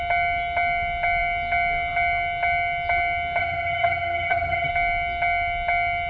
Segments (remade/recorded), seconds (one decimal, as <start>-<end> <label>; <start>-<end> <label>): 0.0-3.4 recorded; 3.4-4.7 remade; 4.7-6.1 recorded